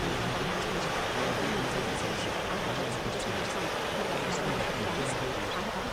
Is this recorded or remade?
recorded